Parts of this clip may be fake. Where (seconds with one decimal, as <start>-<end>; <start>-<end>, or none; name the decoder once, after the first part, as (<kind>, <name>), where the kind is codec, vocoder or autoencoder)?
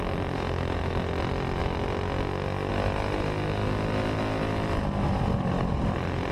none